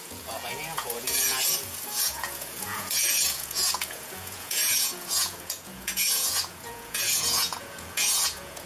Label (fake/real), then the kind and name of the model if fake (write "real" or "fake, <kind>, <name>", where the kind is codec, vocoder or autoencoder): fake, vocoder, Vocos